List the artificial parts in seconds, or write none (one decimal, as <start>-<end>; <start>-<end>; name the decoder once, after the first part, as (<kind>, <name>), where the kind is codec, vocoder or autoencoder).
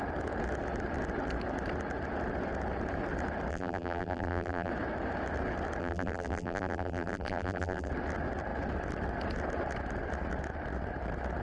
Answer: 3.5-4.7 (vocoder, BigVGAN v2); 5.8-7.9